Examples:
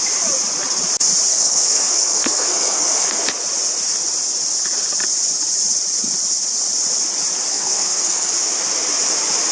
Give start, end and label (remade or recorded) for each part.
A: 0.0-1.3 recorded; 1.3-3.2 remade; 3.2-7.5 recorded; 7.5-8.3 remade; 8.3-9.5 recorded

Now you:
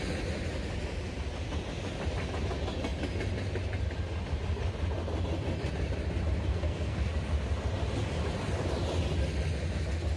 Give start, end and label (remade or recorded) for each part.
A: 0.0-6.5 recorded; 6.5-7.1 remade; 7.1-10.2 recorded

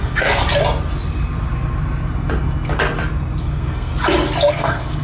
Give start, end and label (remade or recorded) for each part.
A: 0.0-0.4 remade; 0.4-3.4 recorded; 3.4-3.9 remade; 3.9-4.5 recorded; 4.5-5.0 remade

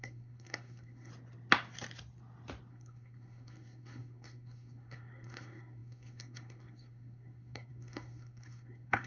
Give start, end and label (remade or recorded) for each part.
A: 0.0-1.1 remade; 1.1-2.7 recorded; 2.7-9.1 remade

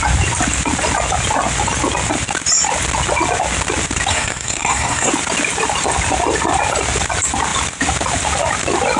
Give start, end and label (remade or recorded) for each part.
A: 0.0-4.1 recorded; 4.1-5.1 remade; 5.1-9.0 recorded

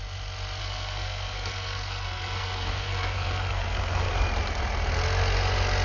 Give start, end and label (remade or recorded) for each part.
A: 0.0-0.6 recorded; 0.6-4.1 remade; 4.1-5.8 recorded

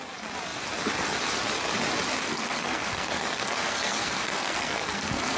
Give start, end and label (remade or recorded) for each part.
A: 0.0-2.2 recorded; 2.2-5.4 remade

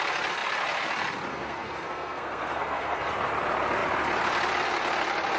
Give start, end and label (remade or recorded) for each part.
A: 0.0-1.3 recorded; 1.3-3.1 remade; 3.1-5.4 recorded